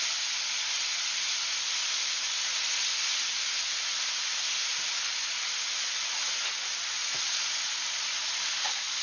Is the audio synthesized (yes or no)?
no